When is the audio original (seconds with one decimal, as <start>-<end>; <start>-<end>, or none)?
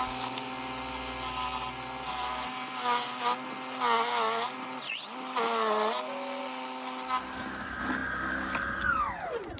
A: 0.0-9.6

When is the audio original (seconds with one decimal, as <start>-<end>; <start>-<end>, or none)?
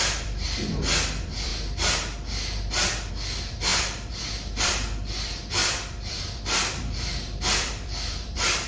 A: 1.5-3.1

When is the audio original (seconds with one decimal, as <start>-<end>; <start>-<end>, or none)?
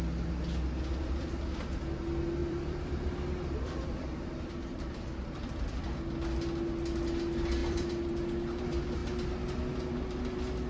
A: 0.0-2.4; 5.8-7.6; 8.1-10.7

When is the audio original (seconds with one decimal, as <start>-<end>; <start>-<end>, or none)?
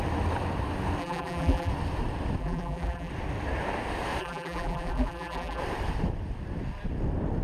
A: 0.0-1.0; 1.7-2.4; 3.1-4.2; 5.6-7.4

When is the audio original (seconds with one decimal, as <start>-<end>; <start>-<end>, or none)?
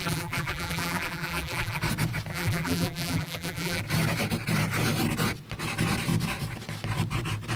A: 1.8-2.3; 3.8-7.6